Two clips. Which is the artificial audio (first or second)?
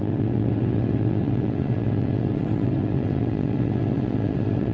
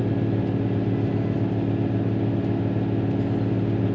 first